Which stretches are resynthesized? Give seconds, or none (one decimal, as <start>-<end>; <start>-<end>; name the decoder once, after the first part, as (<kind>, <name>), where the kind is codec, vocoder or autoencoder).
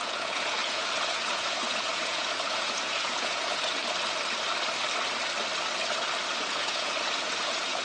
0.0-3.8 (vocoder, Vocos); 6.4-7.8